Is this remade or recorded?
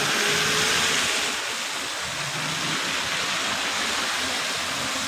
recorded